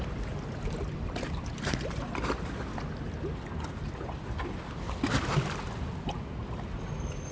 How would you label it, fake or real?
real